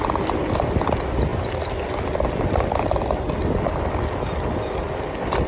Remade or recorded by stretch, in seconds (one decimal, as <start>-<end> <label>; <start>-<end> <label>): 0.0-5.5 recorded